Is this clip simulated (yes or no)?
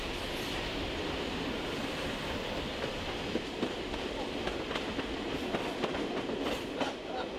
no